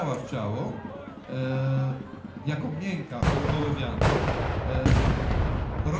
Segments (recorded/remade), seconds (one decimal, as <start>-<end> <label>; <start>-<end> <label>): 0.0-6.0 recorded